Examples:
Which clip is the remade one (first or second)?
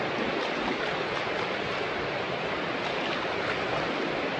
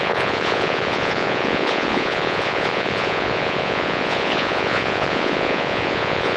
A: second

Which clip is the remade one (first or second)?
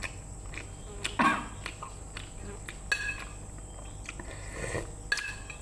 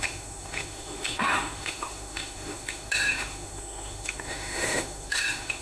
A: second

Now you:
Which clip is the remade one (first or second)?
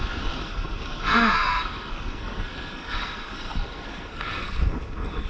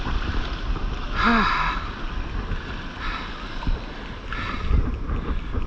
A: first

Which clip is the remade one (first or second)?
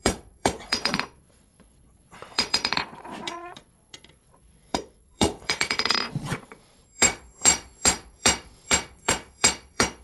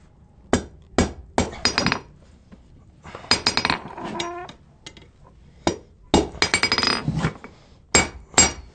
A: first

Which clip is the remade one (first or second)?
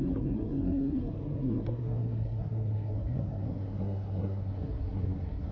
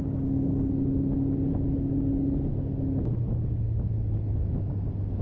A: first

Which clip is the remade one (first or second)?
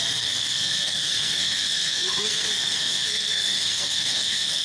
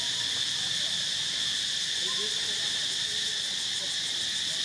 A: first